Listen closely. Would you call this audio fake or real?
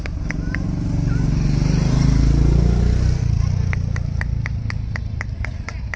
real